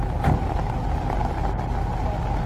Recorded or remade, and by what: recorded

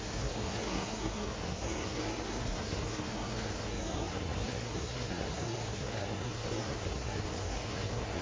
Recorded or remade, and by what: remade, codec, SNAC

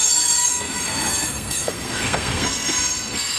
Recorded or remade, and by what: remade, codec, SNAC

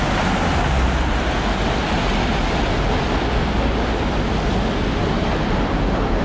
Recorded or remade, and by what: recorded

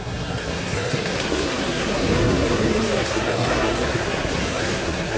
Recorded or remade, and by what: remade, codec, SNAC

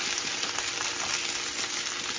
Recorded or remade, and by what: recorded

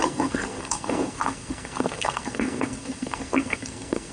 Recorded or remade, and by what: remade, codec, SNAC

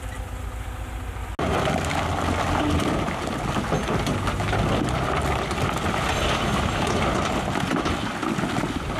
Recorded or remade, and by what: recorded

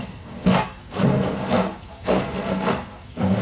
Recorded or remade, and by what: remade, codec, SNAC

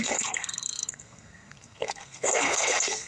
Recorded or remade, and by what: remade, codec, SNAC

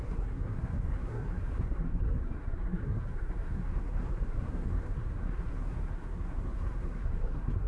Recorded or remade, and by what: remade, codec, SNAC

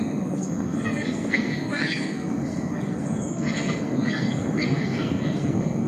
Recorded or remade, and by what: remade, codec, SNAC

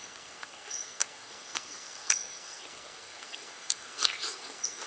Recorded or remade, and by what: remade, codec, SNAC